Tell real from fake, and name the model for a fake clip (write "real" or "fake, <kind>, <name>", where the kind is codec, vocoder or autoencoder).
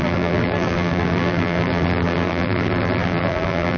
fake, vocoder, BigVGAN v2